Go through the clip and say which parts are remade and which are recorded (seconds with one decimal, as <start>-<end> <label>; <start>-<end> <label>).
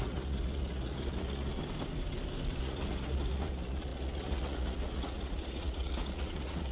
0.0-1.6 remade; 1.6-2.6 recorded; 2.6-6.7 remade